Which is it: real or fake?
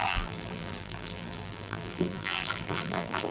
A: fake